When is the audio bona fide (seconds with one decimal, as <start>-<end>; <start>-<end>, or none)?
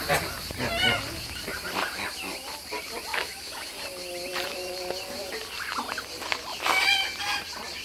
0.0-3.1; 3.7-7.8